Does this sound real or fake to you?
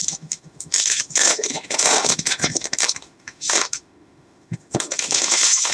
fake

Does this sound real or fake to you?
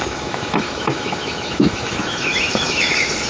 fake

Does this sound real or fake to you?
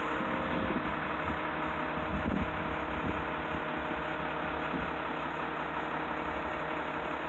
real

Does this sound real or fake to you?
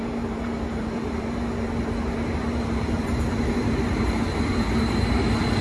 fake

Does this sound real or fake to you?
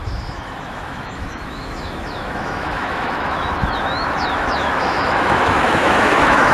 fake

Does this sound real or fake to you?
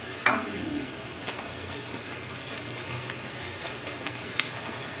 fake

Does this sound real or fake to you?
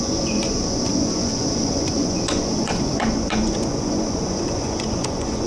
fake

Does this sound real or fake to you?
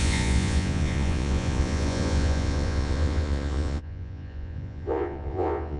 fake